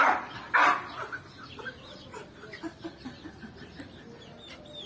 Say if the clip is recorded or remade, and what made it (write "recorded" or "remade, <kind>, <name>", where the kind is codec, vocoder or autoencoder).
recorded